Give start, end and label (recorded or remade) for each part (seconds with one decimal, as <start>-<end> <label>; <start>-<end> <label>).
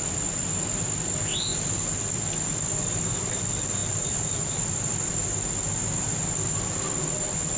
0.0-7.6 recorded